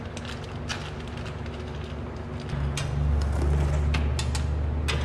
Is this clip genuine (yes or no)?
yes